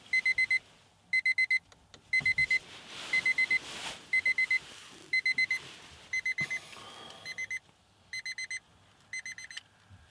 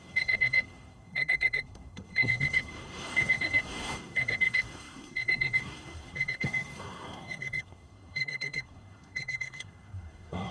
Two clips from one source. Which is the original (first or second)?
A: first